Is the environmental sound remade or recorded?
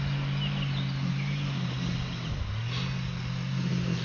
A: recorded